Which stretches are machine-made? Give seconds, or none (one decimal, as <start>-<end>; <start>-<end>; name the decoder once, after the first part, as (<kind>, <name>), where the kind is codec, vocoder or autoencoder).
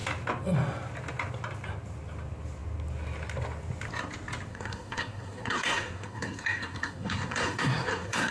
4.5-8.3 (codec, SNAC)